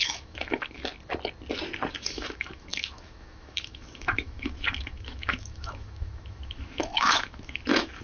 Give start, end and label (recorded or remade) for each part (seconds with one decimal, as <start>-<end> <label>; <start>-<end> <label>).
0.0-0.9 remade; 0.9-1.9 recorded; 1.9-8.0 remade